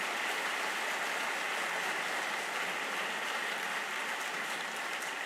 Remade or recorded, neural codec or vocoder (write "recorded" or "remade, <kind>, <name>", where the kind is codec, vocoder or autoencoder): recorded